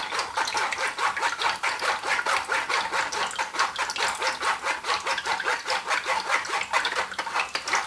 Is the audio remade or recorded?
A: recorded